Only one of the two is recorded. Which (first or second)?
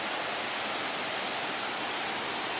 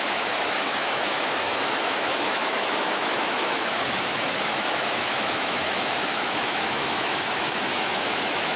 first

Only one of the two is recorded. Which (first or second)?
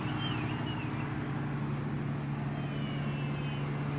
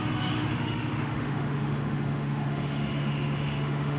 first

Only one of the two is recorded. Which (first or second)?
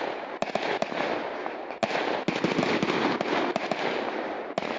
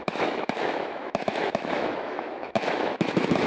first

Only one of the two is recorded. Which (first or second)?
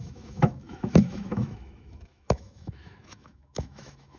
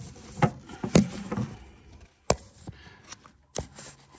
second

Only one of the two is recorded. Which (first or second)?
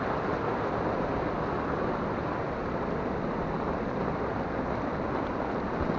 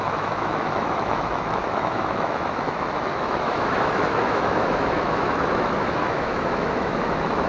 first